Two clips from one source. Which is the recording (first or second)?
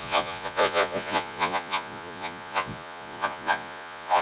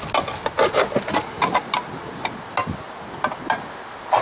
second